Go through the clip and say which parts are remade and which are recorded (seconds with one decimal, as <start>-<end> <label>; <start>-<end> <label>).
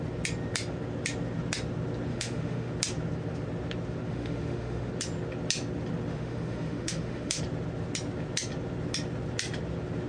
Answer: 0.0-2.1 recorded; 2.1-2.7 remade; 2.7-4.1 recorded; 4.1-4.9 remade; 4.9-6.1 recorded; 6.1-7.4 remade; 7.4-10.1 recorded